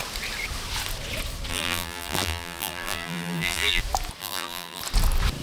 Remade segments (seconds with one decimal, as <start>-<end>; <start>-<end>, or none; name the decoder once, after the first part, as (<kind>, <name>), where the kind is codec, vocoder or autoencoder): 1.5-3.8 (vocoder, BigVGAN v2); 4.2-4.8